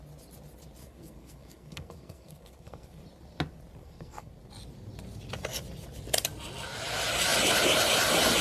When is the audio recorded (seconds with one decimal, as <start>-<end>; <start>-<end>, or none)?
0.0-0.8; 3.0-3.8; 4.3-8.4